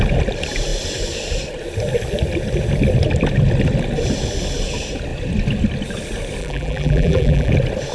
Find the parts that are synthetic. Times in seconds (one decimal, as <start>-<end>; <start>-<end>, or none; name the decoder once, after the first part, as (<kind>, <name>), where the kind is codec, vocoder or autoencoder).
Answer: 6.4-7.5 (vocoder, BigVGAN v2)